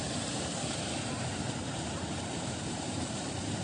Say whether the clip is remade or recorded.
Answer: remade